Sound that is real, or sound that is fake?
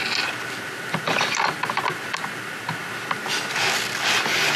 real